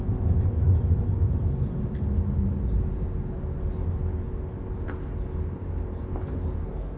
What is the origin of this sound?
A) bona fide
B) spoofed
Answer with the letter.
A